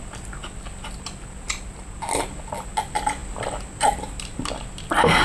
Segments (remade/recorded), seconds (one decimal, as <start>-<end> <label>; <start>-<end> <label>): 0.0-5.2 recorded